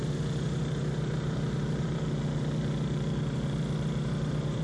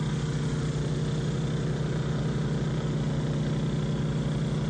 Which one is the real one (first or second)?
second